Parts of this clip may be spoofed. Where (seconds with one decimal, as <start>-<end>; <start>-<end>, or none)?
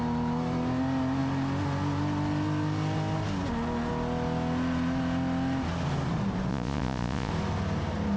6.5-7.3